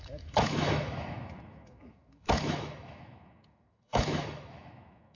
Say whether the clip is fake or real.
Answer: fake